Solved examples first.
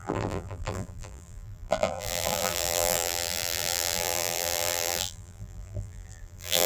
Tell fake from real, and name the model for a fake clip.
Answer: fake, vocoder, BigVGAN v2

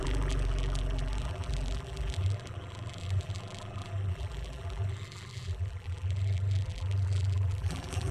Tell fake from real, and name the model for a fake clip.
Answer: fake, vocoder, BigVGAN v2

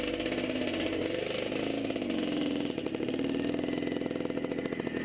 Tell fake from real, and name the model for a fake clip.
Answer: real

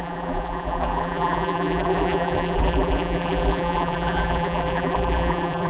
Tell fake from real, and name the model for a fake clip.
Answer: fake, vocoder, BigVGAN v2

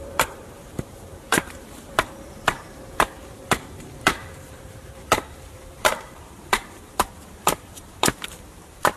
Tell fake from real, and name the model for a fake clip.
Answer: fake, vocoder, BigVGAN v2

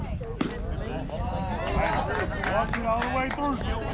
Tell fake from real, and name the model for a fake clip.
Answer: real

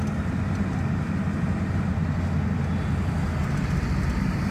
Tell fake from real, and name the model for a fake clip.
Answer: real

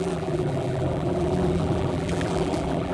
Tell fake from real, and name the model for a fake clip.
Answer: fake, vocoder, BigVGAN v2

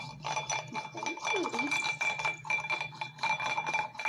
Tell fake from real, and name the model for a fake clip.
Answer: real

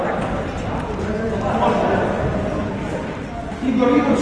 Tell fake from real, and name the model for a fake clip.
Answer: fake, vocoder, BigVGAN v2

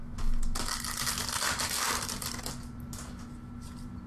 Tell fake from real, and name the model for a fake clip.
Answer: real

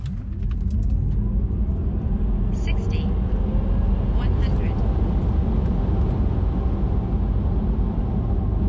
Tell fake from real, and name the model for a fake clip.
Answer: real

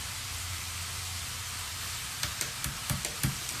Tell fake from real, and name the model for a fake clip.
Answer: fake, vocoder, BigVGAN v2